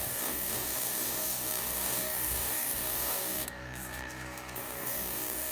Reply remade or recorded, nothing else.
remade